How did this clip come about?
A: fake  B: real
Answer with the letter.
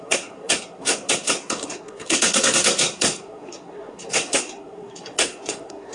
A